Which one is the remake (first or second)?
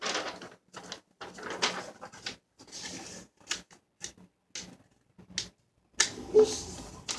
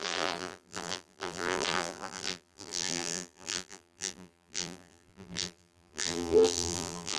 second